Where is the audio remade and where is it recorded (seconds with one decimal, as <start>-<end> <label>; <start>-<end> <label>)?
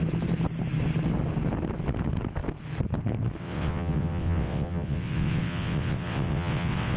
0.0-3.4 recorded; 3.4-7.0 remade